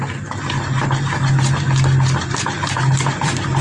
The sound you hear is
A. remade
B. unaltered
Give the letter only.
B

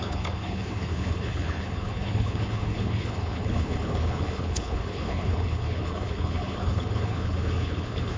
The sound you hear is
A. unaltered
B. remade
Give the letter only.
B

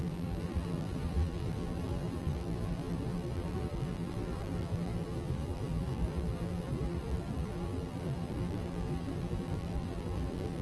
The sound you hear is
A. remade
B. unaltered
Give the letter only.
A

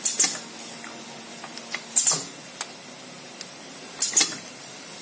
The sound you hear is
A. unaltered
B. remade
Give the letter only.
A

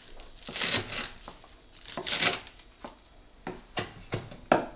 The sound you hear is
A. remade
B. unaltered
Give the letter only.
B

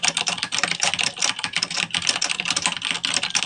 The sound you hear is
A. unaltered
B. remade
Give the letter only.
A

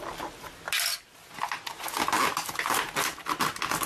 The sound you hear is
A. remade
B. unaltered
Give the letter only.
B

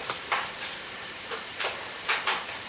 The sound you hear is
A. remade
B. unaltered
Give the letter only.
A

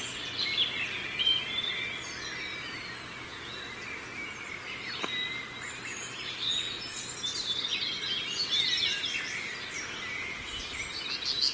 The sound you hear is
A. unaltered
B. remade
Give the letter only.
A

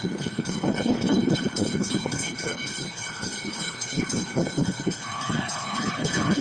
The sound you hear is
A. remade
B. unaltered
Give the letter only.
A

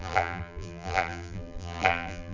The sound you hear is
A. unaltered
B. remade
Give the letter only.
B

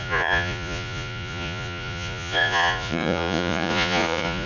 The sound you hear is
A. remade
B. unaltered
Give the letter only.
A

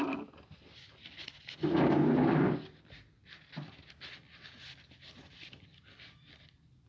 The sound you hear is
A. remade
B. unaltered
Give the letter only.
B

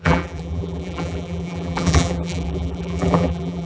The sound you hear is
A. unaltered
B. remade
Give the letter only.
B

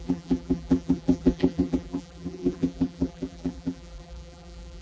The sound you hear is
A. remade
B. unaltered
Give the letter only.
A